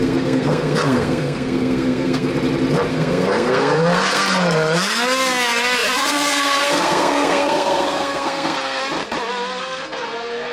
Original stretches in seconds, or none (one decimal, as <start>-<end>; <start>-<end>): 2.3-2.9; 8.8-9.6